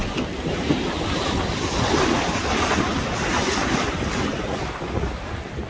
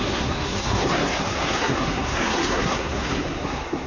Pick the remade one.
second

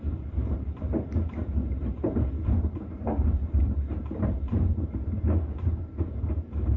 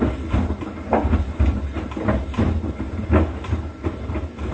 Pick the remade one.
first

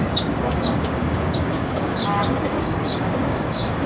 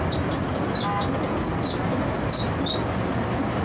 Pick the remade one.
first